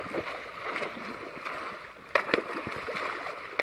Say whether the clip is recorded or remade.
recorded